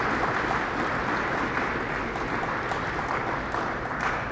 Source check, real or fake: real